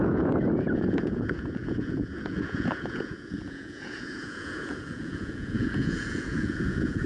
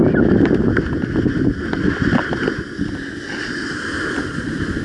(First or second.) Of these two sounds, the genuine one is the second